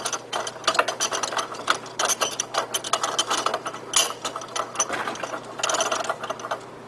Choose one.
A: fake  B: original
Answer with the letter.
B